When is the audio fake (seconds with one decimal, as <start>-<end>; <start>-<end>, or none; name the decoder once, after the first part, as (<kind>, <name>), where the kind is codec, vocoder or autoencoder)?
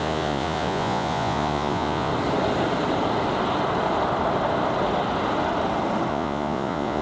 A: 0.0-2.1 (vocoder, Vocos); 6.1-7.0